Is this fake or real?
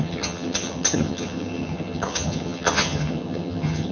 fake